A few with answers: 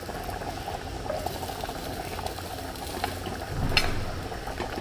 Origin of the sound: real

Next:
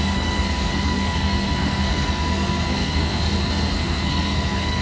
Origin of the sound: fake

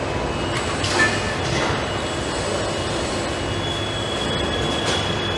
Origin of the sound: real